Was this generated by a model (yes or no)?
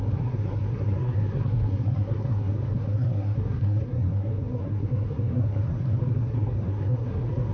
yes